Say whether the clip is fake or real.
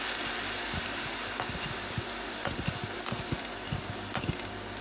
real